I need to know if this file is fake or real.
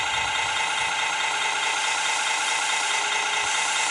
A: real